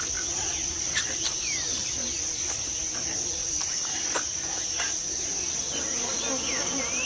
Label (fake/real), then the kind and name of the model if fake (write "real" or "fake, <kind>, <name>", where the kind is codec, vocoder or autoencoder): real